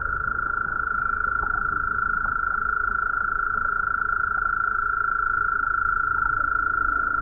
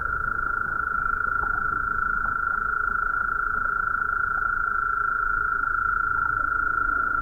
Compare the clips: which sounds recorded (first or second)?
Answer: first